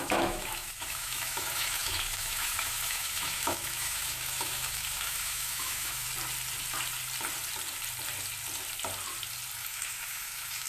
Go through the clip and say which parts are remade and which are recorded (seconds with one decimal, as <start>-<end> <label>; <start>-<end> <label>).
0.0-6.1 remade; 6.1-9.6 recorded; 9.6-10.7 remade